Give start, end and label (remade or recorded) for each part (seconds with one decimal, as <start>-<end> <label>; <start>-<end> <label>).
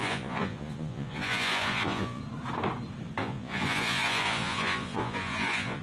0.0-2.2 remade; 2.2-3.2 recorded; 3.2-5.8 remade